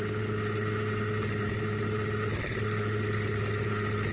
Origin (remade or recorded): recorded